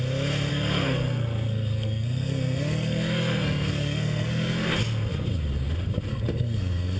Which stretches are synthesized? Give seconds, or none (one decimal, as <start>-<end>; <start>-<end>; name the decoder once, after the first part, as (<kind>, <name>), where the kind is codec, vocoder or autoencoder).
0.5-4.7 (codec, SNAC); 6.1-7.0